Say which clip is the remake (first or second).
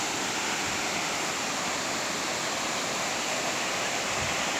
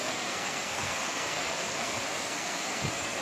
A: second